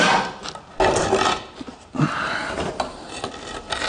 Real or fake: real